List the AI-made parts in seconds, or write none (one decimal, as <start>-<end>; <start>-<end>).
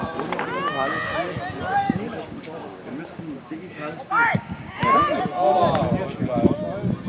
1.7-5.2